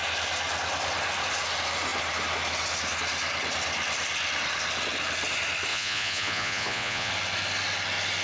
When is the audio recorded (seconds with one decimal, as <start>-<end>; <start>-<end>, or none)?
0.0-5.7; 7.1-8.2